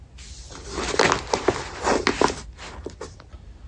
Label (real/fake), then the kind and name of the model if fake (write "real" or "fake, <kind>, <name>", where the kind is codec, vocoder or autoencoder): real